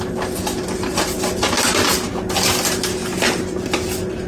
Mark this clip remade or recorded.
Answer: recorded